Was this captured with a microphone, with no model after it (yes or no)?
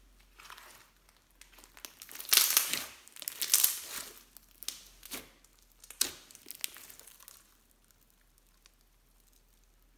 yes